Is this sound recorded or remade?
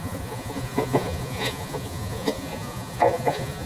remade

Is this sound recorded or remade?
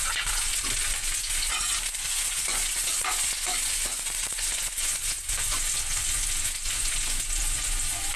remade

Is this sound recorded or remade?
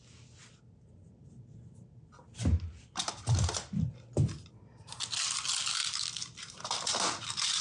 recorded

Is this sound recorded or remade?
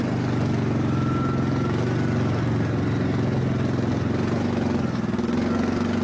recorded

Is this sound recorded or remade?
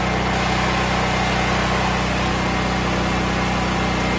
recorded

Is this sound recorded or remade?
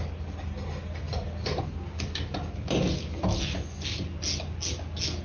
recorded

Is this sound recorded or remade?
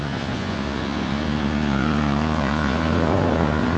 remade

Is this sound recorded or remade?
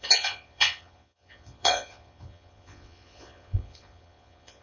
remade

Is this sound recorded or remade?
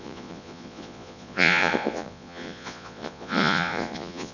remade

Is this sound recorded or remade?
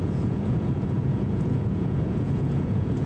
remade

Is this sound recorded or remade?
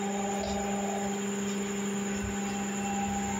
recorded